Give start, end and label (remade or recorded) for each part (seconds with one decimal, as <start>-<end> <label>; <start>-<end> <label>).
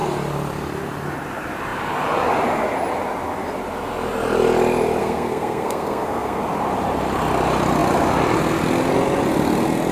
0.0-5.0 recorded; 5.0-6.4 remade; 6.4-9.9 recorded